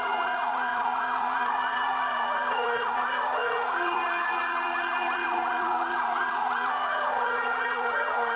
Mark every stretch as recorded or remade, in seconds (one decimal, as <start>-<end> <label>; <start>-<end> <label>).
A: 0.0-8.4 remade